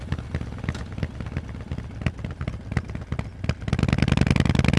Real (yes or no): yes